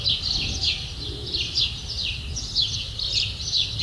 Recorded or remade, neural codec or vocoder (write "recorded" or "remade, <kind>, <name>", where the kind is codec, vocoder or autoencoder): recorded